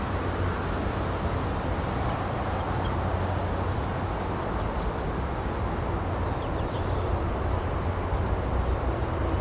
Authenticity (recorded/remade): recorded